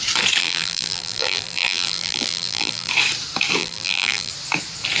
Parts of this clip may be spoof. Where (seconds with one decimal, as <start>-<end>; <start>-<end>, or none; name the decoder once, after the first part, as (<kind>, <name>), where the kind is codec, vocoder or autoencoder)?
0.4-2.9 (vocoder, BigVGAN v2); 3.6-4.3